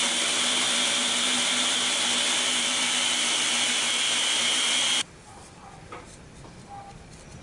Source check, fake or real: fake